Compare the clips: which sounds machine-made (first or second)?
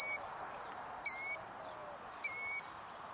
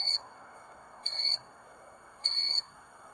second